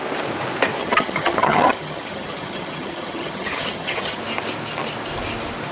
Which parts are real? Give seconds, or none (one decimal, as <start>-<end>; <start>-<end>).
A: 0.0-0.8; 4.2-5.7